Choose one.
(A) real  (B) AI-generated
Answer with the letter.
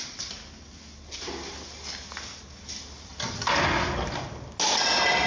A